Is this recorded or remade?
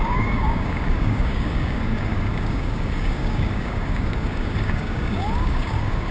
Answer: remade